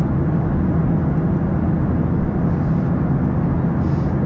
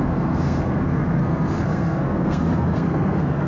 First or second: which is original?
first